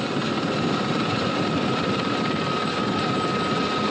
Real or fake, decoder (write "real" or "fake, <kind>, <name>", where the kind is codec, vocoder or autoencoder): real